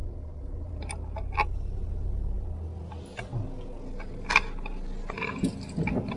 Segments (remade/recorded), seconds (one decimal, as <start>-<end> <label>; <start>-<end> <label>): 0.0-0.7 remade; 0.7-6.2 recorded